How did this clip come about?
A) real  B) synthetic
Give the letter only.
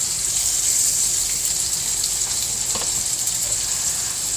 B